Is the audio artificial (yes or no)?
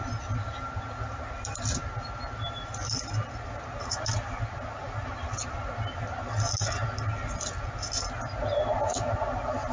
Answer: no